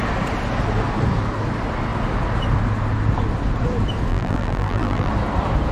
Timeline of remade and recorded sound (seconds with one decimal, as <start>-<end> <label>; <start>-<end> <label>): 0.0-4.1 recorded; 4.1-5.1 remade; 5.1-5.7 recorded